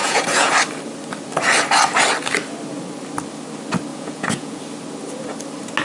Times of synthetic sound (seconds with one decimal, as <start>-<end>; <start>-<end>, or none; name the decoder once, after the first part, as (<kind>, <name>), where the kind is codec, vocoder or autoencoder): 0.0-0.5 (vocoder, Vocos); 3.9-4.6